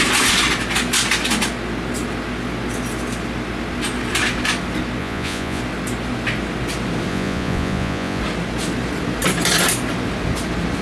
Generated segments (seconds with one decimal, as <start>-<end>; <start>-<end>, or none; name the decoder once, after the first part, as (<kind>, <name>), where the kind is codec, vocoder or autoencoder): 5.0-5.6 (vocoder, Vocos); 7.1-8.2